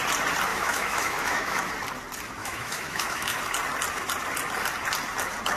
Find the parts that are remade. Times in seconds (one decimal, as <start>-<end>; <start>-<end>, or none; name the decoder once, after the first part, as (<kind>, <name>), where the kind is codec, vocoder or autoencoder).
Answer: 0.5-1.7 (autoencoder, DAC-VAE); 2.4-3.4